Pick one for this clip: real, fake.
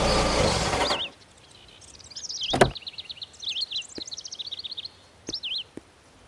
real